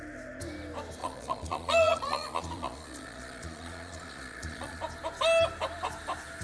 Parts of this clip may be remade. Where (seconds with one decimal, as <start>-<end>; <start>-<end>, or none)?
1.0-4.8